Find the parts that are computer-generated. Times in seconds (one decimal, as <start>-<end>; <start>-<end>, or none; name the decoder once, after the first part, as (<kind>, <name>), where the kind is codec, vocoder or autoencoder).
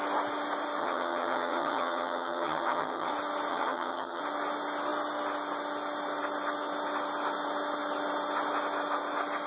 0.8-3.1 (vocoder, HiFi-GAN); 3.5-4.2